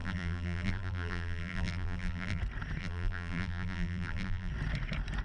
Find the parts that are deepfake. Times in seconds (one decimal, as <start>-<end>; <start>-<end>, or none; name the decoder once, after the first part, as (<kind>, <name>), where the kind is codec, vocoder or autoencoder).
0.0-2.4 (vocoder, BigVGAN v2); 2.8-4.5